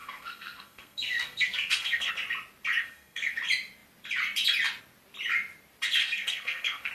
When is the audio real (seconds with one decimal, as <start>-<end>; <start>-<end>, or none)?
2.1-2.8; 3.4-6.0